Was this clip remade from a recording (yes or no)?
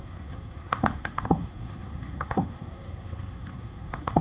yes